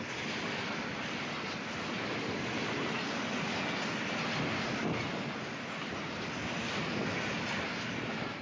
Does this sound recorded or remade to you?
recorded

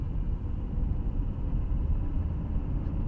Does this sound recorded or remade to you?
recorded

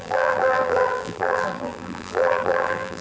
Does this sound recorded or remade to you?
remade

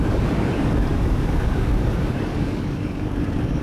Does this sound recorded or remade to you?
remade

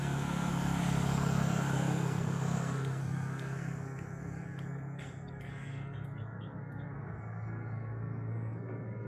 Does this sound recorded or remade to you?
remade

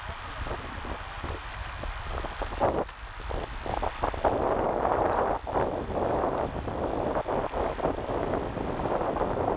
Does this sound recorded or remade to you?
recorded